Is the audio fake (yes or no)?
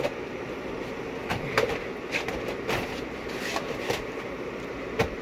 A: no